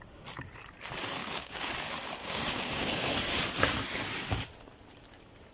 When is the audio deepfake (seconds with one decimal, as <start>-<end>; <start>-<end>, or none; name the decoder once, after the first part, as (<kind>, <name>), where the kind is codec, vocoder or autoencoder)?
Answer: 1.2-1.7 (codec, DAC); 2.2-3.1